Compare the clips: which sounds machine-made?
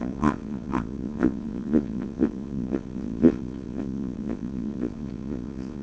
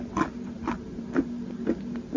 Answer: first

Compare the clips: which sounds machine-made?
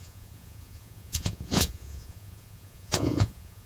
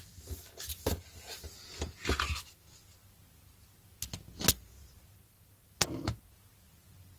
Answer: first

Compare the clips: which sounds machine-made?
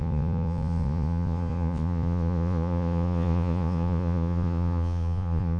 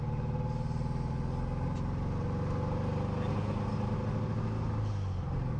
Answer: first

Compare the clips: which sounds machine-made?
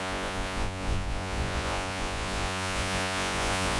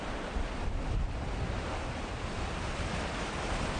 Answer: first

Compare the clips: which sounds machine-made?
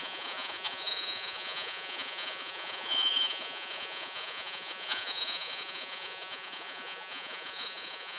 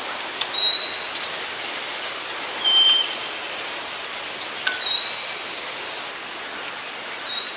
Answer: first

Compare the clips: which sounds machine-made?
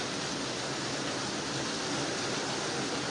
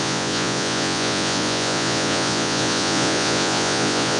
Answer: second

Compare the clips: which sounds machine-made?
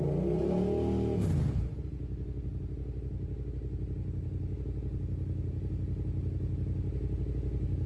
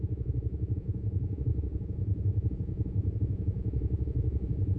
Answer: second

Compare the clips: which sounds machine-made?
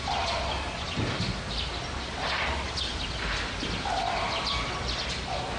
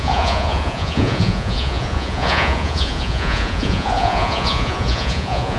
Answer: second